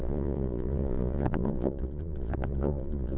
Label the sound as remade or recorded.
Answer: remade